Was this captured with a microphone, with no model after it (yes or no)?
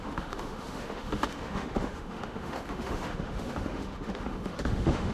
no